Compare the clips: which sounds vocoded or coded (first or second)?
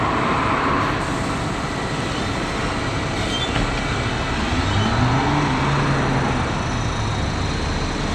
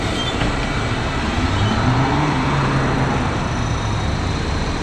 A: second